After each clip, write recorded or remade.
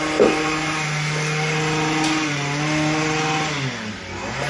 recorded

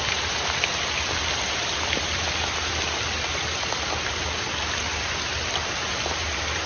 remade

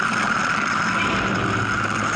recorded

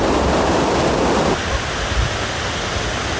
recorded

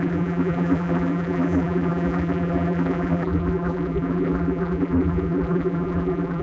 remade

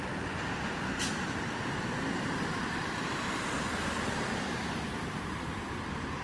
remade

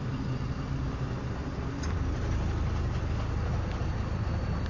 remade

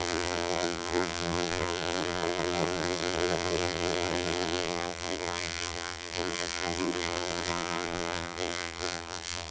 remade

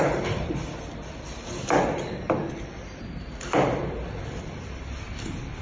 remade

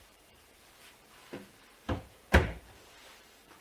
remade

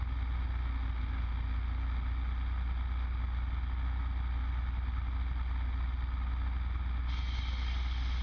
recorded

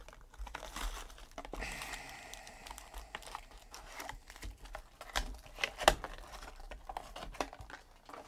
recorded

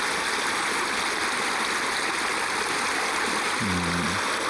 recorded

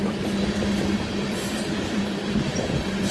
remade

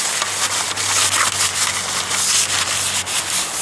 recorded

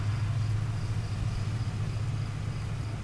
recorded